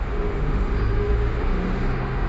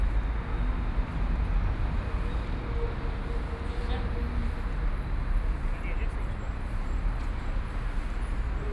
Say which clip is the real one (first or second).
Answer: second